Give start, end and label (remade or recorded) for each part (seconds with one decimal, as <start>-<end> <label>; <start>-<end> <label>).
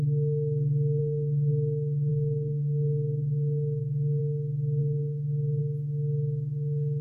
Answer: 0.0-1.0 recorded; 1.0-1.5 remade; 1.5-2.1 recorded; 2.1-4.2 remade; 4.2-4.8 recorded; 4.8-5.6 remade; 5.6-7.0 recorded